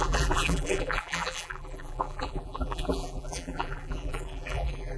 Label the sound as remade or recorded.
remade